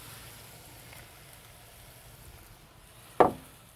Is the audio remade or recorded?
recorded